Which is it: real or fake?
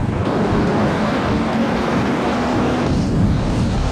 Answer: fake